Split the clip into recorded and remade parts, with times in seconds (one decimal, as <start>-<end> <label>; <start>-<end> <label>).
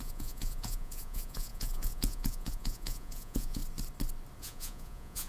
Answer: 0.0-3.6 remade; 3.6-4.4 recorded; 4.4-5.3 remade